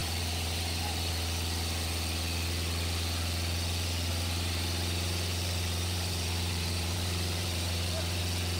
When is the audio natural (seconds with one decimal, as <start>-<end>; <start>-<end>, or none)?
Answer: 1.1-4.1; 8.2-8.6

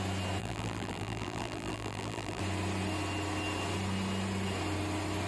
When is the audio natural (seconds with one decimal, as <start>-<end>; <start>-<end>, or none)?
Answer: 0.0-0.4; 2.4-5.3

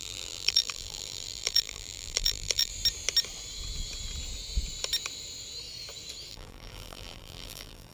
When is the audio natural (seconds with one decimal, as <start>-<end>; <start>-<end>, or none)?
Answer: 2.7-6.3

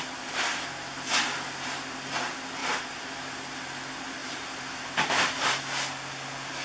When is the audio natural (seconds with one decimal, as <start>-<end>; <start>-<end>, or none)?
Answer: 0.0-2.6; 3.1-4.2; 5.5-6.6

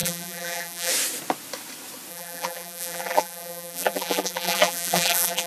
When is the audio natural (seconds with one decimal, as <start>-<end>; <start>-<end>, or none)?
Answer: 0.9-2.1

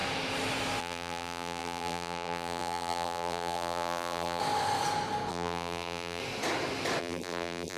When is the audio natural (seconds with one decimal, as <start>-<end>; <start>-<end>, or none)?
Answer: 0.0-0.8; 4.4-5.3; 6.2-7.0

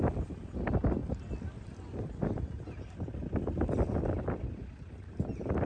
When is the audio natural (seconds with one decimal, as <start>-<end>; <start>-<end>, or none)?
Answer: 0.0-5.7